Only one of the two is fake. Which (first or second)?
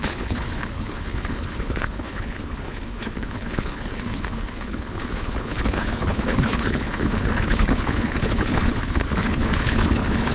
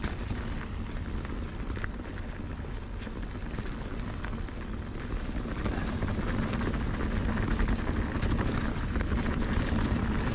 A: first